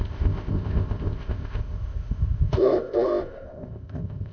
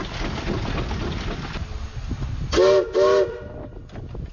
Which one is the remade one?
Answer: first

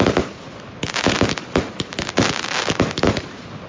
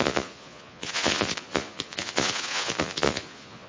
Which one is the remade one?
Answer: second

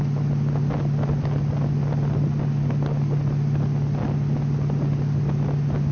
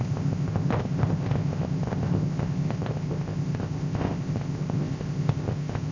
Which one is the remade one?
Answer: second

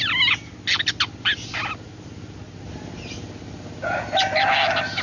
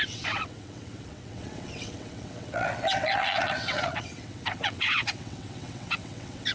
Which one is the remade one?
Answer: second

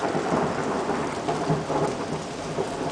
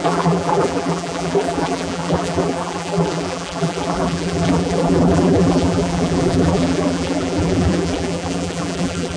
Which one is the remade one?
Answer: second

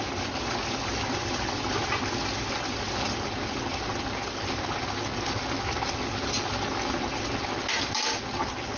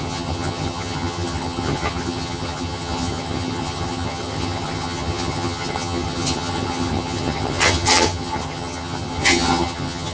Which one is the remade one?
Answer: second